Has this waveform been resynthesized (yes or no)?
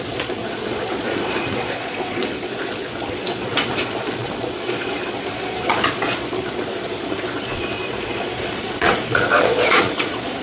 yes